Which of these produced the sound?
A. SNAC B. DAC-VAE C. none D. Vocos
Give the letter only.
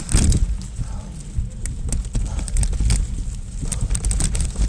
C